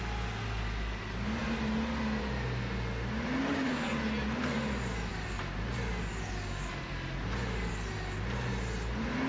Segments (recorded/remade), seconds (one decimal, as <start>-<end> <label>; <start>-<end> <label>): 0.0-9.3 recorded